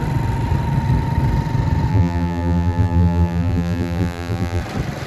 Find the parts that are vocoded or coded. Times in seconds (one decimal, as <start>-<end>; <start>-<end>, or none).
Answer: 1.9-4.6